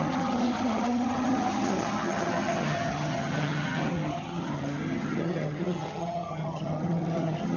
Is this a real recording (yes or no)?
no